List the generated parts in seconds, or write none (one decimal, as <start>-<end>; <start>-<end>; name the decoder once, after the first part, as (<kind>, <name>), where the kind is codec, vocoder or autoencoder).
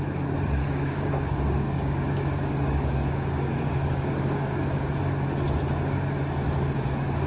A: 0.6-4.9 (codec, DAC)